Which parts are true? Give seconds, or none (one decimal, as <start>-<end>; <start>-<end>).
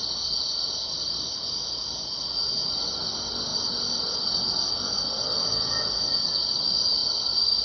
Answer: 0.0-7.6